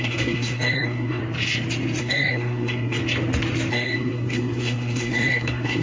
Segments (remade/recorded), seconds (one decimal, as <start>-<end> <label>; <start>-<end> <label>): 0.0-1.2 remade; 1.2-2.0 recorded; 2.0-3.0 remade; 3.0-3.7 recorded; 3.7-5.8 remade